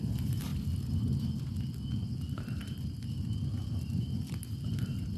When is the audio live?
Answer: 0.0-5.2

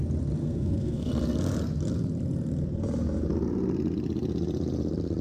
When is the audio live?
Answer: 0.0-0.4; 1.1-5.2

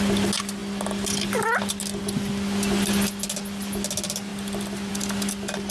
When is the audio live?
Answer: 0.0-5.7